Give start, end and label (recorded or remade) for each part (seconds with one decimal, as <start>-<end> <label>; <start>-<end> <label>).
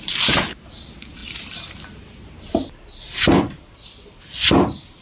0.0-5.0 recorded